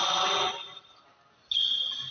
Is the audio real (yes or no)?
yes